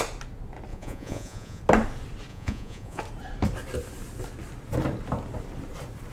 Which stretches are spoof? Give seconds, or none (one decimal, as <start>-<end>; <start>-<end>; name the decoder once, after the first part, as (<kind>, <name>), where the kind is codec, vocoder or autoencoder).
0.7-1.6 (vocoder, Vocos); 2.3-3.0